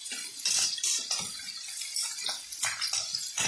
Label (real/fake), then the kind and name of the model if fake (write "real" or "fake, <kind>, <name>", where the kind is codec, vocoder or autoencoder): real